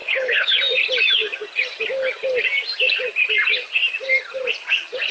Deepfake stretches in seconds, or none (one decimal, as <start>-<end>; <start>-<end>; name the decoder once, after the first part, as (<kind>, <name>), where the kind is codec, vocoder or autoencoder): 0.0-0.6 (codec, HILCodec)